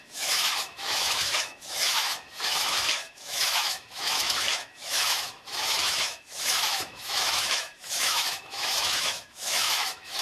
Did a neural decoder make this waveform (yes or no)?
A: yes